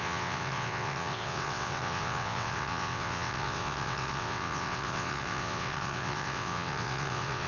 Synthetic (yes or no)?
yes